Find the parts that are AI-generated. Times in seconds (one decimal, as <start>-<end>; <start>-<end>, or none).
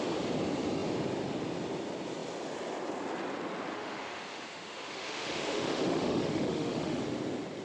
3.7-7.0